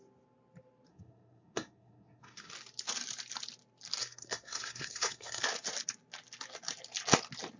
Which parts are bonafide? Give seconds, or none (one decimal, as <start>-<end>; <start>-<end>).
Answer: 0.0-0.9; 2.5-4.0; 5.4-7.6